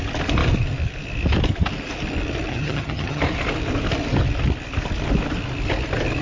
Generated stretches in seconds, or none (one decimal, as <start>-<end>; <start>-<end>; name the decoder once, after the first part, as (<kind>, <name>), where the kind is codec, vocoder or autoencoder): 2.5-3.2 (vocoder, HiFi-GAN)